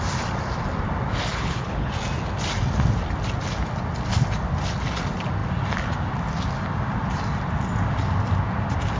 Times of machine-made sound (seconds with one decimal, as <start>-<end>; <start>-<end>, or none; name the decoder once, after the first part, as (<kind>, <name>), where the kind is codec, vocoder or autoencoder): 1.3-1.9 (codec, HILCodec)